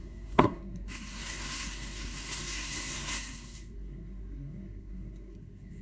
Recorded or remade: remade